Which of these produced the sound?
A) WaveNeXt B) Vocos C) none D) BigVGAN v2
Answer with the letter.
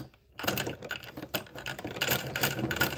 D